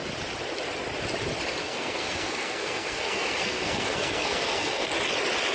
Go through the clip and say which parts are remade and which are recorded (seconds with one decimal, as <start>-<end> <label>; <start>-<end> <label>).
0.0-1.6 recorded; 1.6-4.9 remade; 4.9-5.5 recorded